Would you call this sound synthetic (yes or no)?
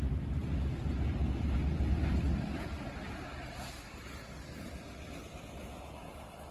no